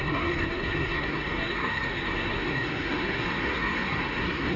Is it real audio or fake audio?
fake